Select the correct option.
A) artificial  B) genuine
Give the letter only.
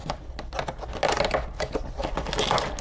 B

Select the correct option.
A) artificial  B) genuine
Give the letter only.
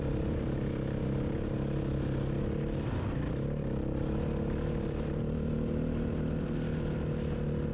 B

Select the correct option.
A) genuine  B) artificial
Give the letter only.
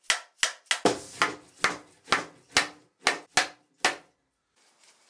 A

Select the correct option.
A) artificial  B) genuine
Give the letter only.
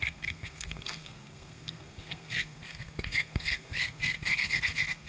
A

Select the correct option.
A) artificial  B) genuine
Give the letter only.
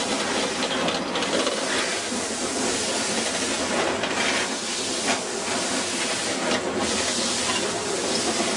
B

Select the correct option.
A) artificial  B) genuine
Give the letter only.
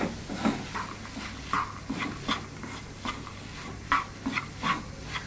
B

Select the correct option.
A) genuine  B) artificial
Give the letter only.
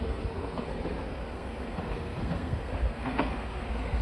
B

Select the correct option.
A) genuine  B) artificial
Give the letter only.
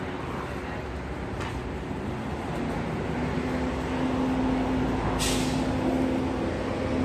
A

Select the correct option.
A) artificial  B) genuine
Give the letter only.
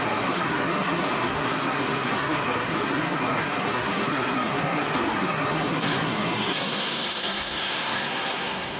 A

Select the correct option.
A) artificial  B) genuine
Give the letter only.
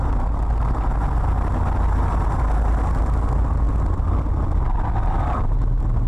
B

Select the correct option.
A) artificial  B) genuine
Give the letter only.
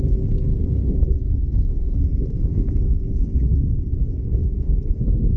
A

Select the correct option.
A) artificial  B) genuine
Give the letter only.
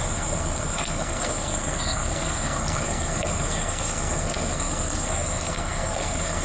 A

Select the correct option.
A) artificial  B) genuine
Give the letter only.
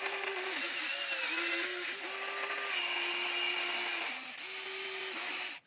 B